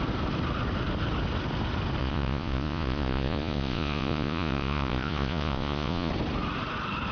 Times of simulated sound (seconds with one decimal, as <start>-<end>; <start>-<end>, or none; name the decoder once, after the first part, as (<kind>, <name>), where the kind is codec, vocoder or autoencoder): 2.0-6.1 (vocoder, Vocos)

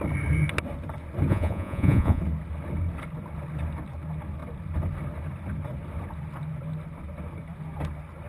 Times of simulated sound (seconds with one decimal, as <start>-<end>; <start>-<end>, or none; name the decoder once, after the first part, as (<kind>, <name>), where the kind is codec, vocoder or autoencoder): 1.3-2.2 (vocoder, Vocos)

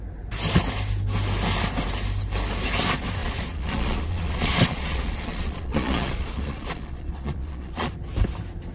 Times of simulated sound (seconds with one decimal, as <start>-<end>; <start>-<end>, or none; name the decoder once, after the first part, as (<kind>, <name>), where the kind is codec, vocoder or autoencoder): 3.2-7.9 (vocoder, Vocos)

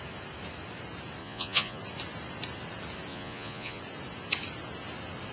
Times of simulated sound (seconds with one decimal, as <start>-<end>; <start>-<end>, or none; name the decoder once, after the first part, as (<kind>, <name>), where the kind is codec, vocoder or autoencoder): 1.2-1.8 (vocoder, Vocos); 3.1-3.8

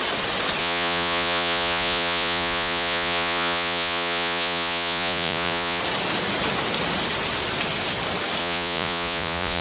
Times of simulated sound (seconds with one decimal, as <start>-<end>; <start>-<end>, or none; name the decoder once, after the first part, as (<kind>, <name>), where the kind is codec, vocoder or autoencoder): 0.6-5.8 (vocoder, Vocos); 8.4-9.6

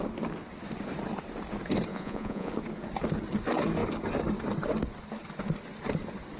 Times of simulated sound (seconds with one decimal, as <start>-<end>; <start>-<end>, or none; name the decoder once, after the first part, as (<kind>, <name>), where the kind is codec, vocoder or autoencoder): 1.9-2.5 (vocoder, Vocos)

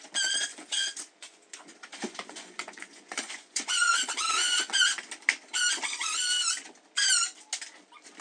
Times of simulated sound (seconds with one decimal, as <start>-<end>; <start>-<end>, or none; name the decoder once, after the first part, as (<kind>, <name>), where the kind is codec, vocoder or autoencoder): 0.5-4.8 (vocoder, Vocos)